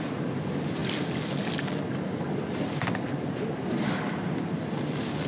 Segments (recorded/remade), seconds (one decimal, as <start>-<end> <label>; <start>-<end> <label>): 0.0-5.3 recorded